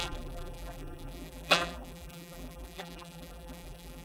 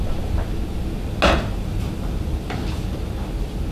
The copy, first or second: first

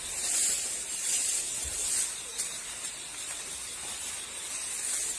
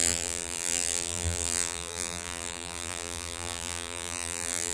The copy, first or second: second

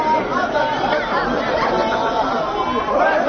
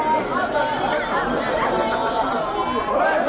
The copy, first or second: first